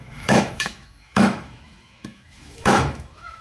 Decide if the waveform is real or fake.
fake